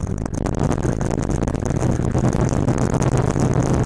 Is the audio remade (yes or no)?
no